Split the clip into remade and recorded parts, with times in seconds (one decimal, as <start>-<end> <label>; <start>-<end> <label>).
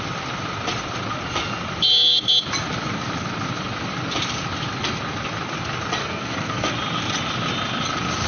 0.0-6.0 recorded; 6.0-6.7 remade; 6.7-8.3 recorded